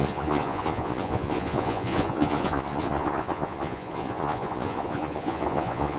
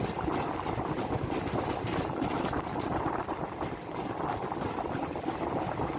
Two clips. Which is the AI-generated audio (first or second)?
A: first